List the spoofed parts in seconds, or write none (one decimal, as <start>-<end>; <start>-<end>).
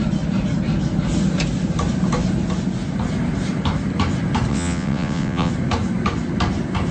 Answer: 4.5-5.5